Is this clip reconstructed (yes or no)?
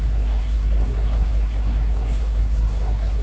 yes